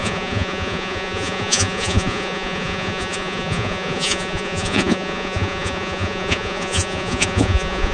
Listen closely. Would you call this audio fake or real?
fake